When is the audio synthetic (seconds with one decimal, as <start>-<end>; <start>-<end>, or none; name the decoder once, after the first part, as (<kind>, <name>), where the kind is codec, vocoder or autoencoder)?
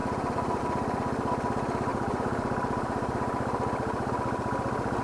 0.0-0.6 (vocoder, BigVGAN v2); 1.9-4.1